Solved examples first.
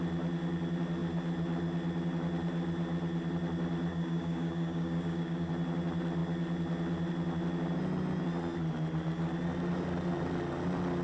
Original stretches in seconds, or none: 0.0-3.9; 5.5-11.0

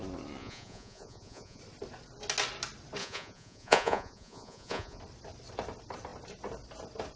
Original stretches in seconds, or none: 0.0-0.4; 1.6-3.0; 5.0-7.2

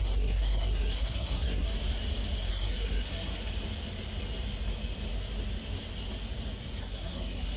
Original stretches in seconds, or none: 1.7-2.5; 3.5-6.8